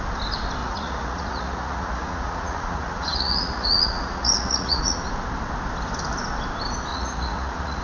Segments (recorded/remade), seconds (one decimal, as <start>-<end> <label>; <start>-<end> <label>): 0.0-0.6 recorded; 0.6-5.0 remade; 5.0-6.9 recorded; 6.9-7.8 remade